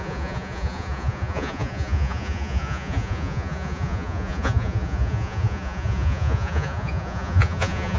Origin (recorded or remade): remade